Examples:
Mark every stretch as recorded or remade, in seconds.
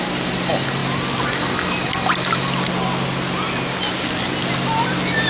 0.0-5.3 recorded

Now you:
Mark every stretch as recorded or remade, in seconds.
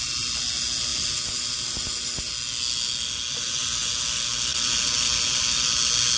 0.0-6.2 recorded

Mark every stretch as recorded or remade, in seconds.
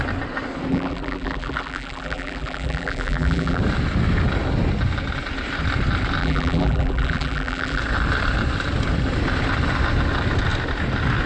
0.0-0.7 recorded; 0.7-3.6 remade; 3.6-6.2 recorded; 6.2-7.8 remade; 7.8-11.3 recorded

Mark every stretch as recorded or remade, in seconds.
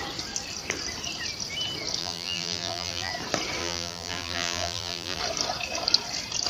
0.0-2.0 recorded; 2.0-3.1 remade; 3.1-3.6 recorded; 3.6-5.2 remade; 5.2-6.5 recorded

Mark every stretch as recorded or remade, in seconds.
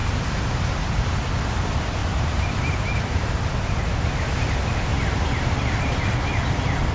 0.0-0.7 remade; 0.7-2.0 recorded; 2.0-3.4 remade; 3.4-4.9 recorded; 4.9-5.5 remade; 5.5-6.9 recorded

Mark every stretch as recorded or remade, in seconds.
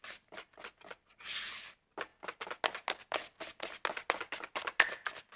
0.0-5.4 recorded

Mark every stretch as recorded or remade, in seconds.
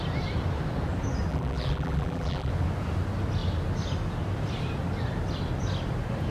0.0-1.3 recorded; 1.3-2.5 remade; 2.5-6.3 recorded